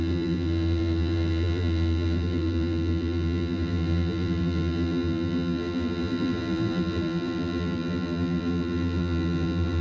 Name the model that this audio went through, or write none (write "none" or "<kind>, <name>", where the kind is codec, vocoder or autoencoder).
vocoder, BigVGAN v2